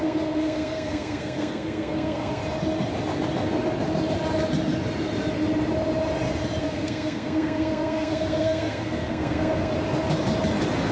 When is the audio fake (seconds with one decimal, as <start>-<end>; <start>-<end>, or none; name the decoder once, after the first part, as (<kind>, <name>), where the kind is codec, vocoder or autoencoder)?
0.0-2.4 (codec, SNAC); 6.6-9.7